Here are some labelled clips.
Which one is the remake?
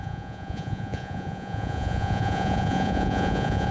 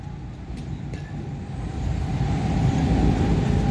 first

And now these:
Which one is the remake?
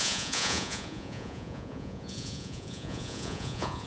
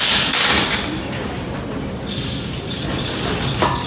first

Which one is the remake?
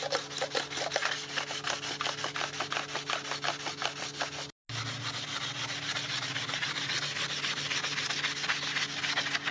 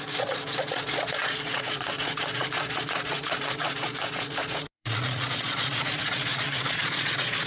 second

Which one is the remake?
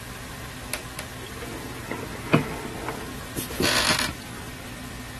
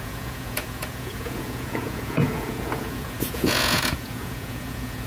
second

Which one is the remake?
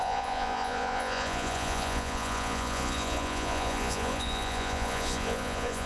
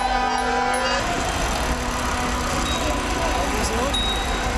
first